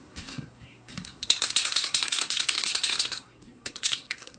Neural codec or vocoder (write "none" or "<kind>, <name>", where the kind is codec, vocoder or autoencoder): codec, SNAC